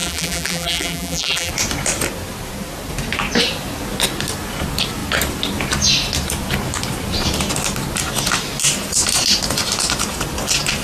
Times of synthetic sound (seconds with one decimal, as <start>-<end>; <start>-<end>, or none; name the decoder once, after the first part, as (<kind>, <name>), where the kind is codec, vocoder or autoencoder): 0.0-1.5 (vocoder, BigVGAN v2)